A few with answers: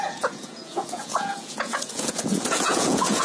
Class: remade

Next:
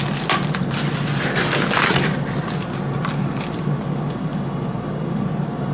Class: recorded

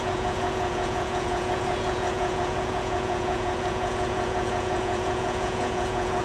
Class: remade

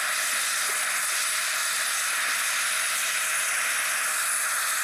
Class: recorded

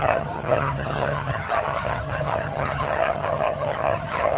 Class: remade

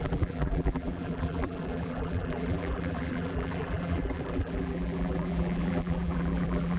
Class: remade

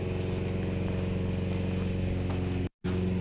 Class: recorded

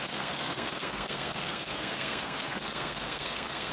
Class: remade